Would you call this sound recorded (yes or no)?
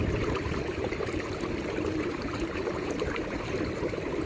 no